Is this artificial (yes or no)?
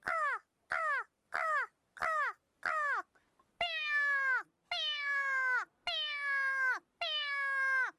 no